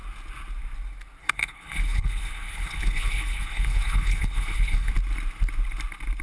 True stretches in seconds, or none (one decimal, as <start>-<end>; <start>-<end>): 0.0-1.2; 4.9-6.2